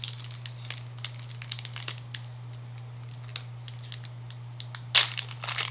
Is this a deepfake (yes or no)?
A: no